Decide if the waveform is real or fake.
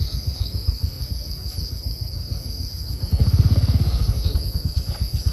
fake